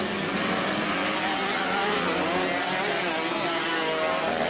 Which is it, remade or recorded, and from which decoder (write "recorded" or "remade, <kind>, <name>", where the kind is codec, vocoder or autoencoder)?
recorded